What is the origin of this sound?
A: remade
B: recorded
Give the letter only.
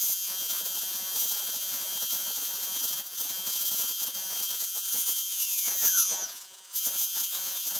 A